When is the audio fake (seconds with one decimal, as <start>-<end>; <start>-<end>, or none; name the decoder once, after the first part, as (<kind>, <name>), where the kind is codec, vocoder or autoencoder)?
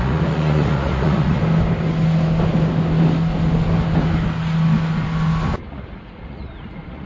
0.0-1.4 (vocoder, Vocos); 5.7-7.1